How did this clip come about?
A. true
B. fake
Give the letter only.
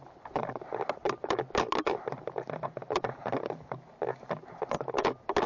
A